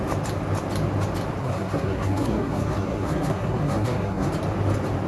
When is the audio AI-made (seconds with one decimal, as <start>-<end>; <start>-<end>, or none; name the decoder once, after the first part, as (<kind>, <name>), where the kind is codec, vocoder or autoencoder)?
1.4-4.3 (codec, SNAC)